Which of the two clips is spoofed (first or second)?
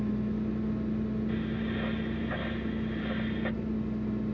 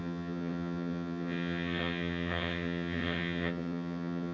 second